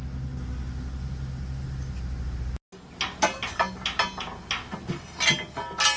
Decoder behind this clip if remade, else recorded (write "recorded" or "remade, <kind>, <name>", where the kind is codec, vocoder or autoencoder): recorded